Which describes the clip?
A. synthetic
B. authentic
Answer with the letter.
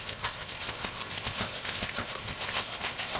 A